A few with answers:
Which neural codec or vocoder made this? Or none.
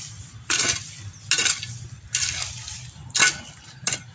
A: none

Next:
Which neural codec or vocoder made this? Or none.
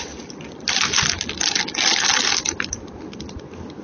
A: none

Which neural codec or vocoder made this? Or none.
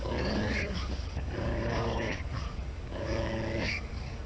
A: codec, DAC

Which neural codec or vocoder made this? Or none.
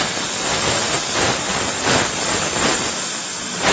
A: none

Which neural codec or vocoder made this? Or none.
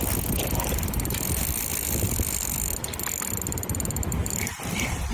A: none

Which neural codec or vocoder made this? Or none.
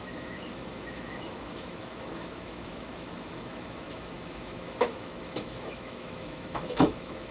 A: autoencoder, DAC-VAE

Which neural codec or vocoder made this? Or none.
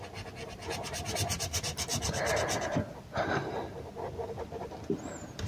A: vocoder, BigVGAN v2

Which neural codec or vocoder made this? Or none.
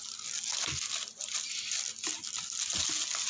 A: none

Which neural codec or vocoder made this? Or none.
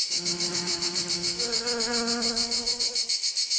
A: autoencoder, DAC-VAE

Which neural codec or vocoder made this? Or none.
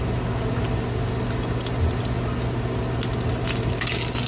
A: none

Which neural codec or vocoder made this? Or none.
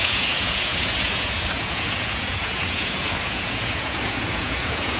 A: vocoder, Vocos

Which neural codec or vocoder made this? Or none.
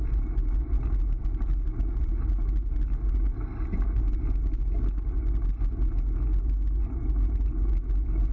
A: none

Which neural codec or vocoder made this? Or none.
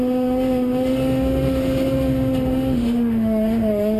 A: autoencoder, DAC-VAE